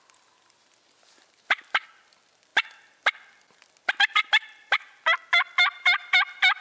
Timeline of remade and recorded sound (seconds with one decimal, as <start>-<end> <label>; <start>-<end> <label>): 0.0-6.6 recorded